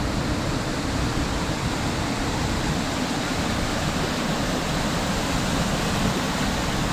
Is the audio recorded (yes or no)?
yes